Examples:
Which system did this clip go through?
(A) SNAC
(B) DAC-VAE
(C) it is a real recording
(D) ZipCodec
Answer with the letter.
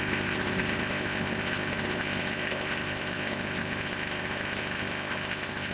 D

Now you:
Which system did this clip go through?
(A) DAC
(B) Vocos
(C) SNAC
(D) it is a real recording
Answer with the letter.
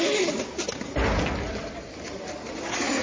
D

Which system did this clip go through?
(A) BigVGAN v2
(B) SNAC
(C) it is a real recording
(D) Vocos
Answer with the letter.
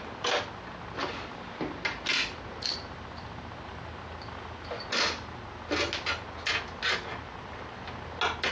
C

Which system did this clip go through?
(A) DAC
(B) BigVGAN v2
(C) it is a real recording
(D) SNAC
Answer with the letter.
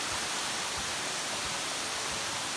B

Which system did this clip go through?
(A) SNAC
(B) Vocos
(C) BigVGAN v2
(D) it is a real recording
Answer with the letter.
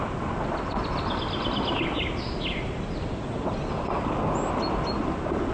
D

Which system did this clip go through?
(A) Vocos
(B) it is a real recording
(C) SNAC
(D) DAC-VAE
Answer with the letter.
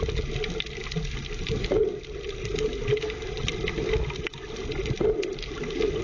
B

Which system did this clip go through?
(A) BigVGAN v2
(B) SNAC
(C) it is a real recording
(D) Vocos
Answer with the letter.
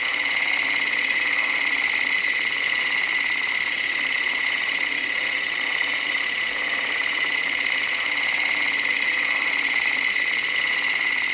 D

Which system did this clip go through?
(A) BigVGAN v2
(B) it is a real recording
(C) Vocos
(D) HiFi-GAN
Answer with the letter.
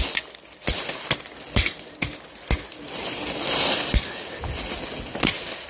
B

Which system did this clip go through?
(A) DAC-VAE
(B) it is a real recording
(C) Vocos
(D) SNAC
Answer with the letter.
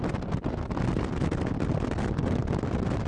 B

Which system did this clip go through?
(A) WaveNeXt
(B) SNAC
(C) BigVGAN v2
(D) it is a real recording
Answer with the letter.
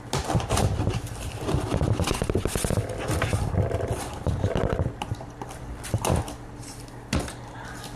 C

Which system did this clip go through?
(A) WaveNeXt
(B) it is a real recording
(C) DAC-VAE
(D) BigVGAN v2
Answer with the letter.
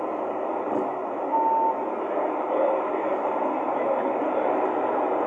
B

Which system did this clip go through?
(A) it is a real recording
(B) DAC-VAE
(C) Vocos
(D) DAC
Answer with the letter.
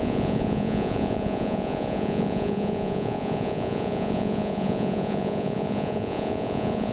C